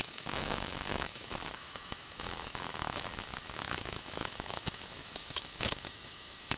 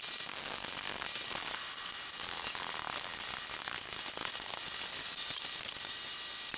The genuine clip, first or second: second